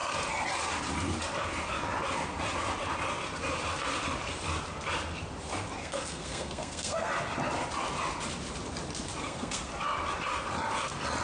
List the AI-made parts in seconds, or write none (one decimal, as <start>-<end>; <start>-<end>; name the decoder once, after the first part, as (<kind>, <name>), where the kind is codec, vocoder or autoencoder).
5.8-7.1 (codec, SNAC); 9.2-9.7